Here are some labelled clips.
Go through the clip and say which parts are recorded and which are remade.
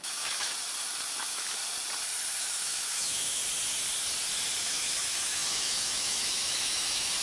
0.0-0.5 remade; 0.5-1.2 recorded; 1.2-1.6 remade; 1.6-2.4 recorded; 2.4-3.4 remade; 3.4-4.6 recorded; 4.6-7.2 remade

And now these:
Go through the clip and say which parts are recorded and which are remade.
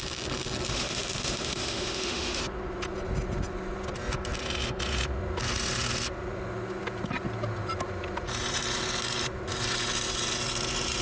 0.0-0.7 recorded; 0.7-2.4 remade; 2.4-11.0 recorded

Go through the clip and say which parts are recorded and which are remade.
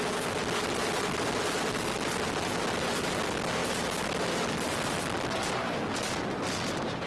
0.0-7.1 recorded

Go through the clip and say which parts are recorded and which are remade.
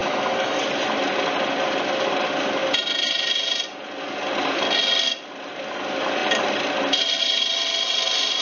0.0-0.6 remade; 0.6-8.4 recorded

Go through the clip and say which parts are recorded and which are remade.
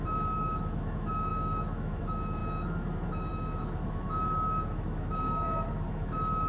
0.0-6.5 remade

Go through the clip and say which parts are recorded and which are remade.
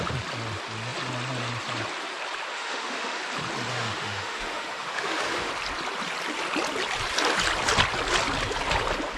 0.0-2.5 recorded; 2.5-3.2 remade; 3.2-3.7 recorded; 3.7-5.5 remade; 5.5-9.2 recorded